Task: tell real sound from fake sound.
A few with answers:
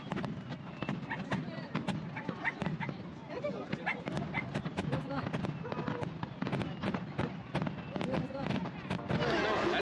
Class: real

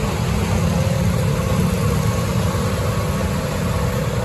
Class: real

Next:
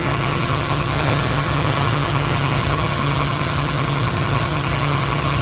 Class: fake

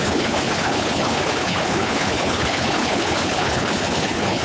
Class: fake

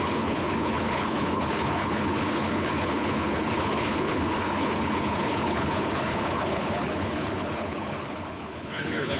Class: fake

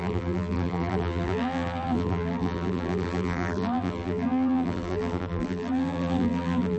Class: fake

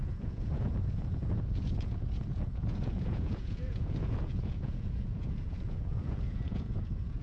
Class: fake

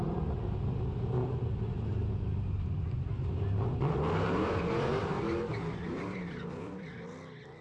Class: fake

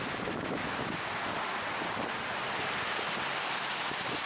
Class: real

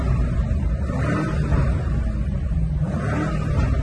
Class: fake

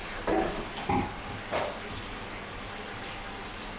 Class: real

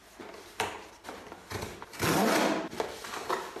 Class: real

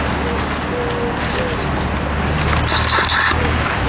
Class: real